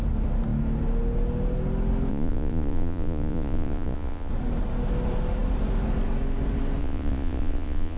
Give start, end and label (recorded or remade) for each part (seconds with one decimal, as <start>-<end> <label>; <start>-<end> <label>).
0.0-2.1 recorded; 2.1-4.3 remade; 4.3-6.8 recorded; 6.8-8.0 remade